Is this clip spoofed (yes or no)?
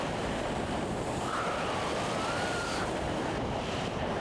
yes